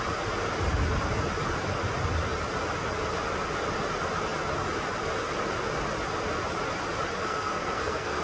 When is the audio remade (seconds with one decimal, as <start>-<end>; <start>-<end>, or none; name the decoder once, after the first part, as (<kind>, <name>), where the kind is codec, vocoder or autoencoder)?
7.2-8.2 (codec, SNAC)